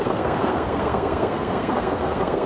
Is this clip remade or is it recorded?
remade